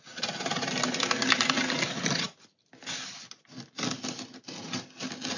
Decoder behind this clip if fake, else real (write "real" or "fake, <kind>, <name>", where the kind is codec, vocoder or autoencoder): real